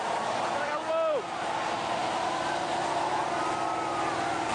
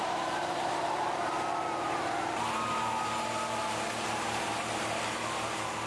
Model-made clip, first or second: second